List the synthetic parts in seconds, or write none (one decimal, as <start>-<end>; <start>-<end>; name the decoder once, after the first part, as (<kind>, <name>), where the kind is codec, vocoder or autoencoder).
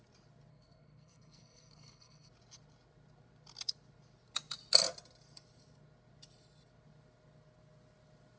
0.5-2.3 (codec, SNAC)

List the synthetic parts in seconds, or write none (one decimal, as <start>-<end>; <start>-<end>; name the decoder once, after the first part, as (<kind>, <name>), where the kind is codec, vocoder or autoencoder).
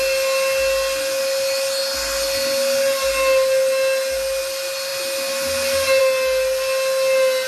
none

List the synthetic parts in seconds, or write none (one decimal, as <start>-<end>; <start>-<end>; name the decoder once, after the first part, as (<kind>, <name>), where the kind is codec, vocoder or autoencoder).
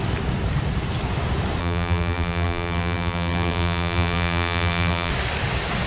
1.6-5.1 (vocoder, BigVGAN v2)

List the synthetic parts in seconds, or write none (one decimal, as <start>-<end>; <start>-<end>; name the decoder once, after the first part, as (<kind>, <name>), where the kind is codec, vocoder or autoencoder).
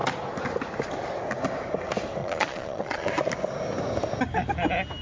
2.2-3.1 (vocoder, Vocos)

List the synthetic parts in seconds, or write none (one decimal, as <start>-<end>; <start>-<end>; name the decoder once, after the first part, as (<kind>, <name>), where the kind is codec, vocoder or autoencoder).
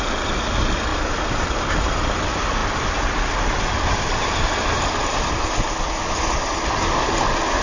0.9-1.8 (vocoder, BigVGAN v2)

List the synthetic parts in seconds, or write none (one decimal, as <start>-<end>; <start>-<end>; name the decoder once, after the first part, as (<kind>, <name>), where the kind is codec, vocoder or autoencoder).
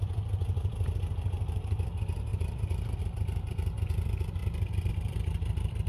0.0-5.9 (vocoder, BigVGAN v2)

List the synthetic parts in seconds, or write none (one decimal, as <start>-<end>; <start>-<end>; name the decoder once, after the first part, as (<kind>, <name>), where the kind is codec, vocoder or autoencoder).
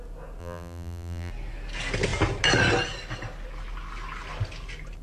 0.4-1.3 (vocoder, BigVGAN v2)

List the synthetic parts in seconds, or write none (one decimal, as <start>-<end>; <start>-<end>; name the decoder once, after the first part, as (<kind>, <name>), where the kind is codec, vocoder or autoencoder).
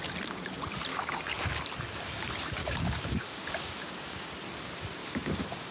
0.9-1.6 (codec, DAC); 2.6-4.3; 5.0-5.7